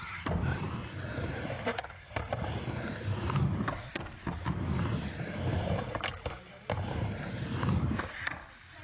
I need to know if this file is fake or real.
real